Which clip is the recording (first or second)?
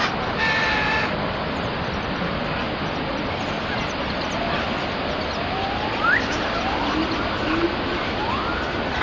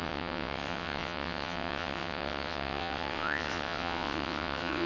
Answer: first